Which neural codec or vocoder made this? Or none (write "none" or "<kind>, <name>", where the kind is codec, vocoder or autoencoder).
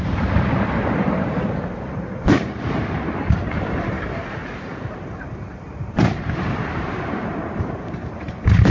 vocoder, BigVGAN v2